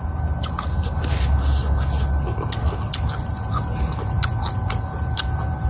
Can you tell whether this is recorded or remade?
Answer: recorded